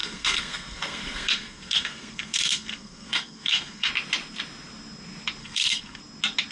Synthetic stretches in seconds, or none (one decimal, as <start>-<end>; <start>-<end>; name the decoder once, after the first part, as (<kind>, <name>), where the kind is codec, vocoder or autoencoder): 0.0-3.9 (codec, SNAC); 5.4-6.0